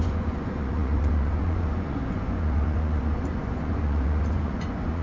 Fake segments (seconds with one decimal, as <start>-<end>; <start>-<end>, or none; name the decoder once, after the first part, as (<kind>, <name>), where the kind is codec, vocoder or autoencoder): 0.0-5.0 (vocoder, Vocos)